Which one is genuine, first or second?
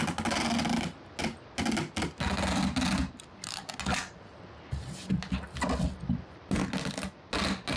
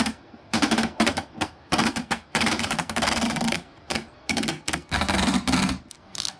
first